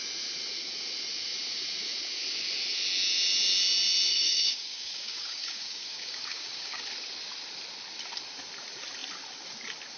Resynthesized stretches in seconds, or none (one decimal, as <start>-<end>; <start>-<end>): 4.1-6.8